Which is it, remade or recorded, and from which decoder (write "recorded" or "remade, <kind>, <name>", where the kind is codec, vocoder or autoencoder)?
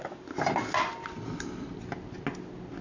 recorded